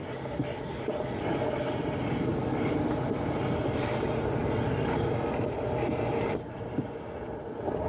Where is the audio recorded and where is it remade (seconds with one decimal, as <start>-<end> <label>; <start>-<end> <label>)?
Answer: 0.0-7.9 recorded